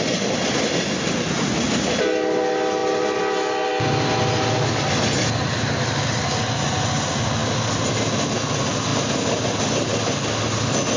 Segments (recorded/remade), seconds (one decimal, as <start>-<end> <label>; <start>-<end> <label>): 0.0-11.0 recorded